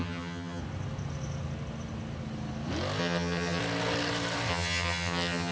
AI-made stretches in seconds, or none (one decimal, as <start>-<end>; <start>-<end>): 0.0-0.6; 3.0-3.6; 4.5-5.5